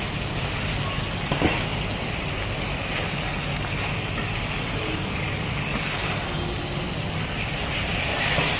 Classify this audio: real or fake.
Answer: real